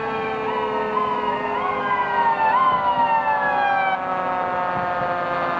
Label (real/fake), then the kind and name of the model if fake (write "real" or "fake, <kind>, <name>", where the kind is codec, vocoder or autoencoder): real